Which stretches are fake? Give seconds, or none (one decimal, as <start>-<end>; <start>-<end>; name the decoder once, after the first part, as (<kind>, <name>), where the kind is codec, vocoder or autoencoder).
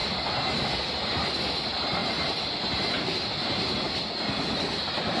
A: none